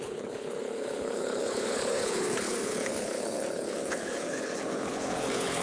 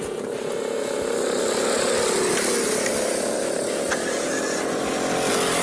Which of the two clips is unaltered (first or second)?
second